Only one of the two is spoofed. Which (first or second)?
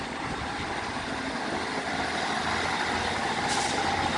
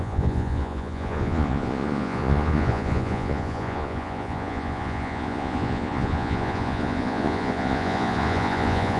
second